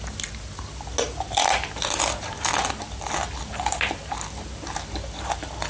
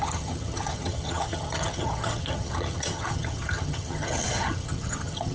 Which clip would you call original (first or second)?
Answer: first